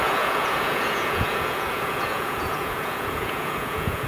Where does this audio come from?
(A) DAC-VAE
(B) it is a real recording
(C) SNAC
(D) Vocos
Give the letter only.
D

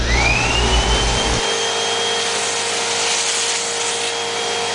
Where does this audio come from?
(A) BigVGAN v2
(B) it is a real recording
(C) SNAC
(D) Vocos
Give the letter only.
B